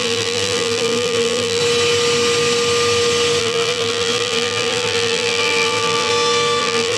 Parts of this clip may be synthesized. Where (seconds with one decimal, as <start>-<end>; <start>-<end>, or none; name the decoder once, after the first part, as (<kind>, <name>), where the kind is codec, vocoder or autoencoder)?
0.0-1.6 (vocoder, BigVGAN v2); 3.4-6.1; 6.6-7.0